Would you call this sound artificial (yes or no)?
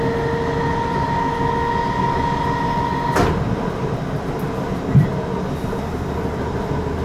no